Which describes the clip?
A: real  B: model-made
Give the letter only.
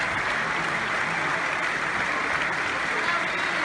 A